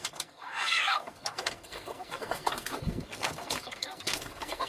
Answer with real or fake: fake